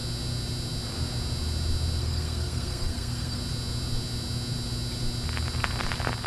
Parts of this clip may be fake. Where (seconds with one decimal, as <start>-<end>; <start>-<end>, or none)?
2.0-3.4